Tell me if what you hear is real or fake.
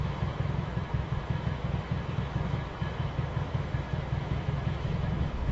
fake